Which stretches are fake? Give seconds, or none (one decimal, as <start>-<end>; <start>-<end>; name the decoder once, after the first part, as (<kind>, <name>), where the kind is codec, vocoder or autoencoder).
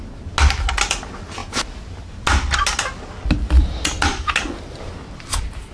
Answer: none